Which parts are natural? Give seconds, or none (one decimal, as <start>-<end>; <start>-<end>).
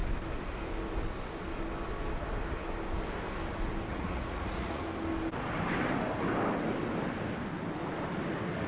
0.0-3.9; 4.8-8.7